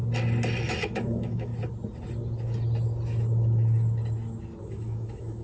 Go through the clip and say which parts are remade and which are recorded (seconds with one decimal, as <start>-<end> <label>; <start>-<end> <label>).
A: 0.0-0.6 recorded; 0.6-1.5 remade; 1.5-4.7 recorded; 4.7-5.4 remade